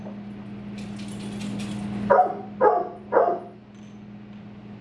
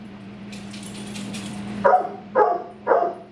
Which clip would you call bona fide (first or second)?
first